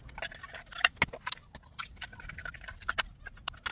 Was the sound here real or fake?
real